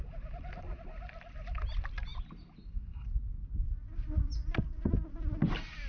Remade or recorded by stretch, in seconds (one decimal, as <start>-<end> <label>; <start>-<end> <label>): 0.0-5.9 recorded